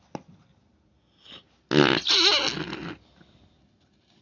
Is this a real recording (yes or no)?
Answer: yes